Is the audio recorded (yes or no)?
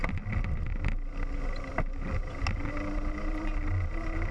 yes